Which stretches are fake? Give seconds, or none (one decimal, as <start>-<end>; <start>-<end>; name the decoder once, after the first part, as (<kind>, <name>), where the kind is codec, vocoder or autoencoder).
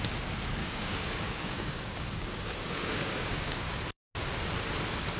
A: 0.6-3.7 (codec, DAC)